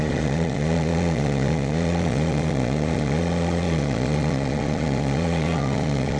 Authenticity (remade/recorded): remade